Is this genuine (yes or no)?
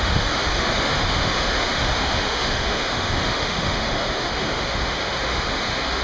no